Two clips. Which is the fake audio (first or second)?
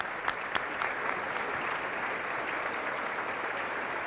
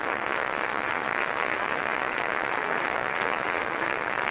second